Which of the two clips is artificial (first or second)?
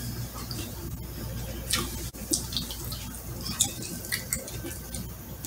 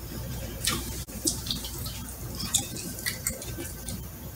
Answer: second